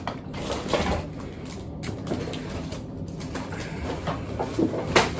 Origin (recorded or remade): recorded